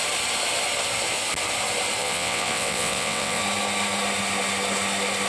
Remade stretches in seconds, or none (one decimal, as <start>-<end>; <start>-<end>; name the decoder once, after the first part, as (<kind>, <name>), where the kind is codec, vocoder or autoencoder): 2.0-3.4 (vocoder, WaveNeXt)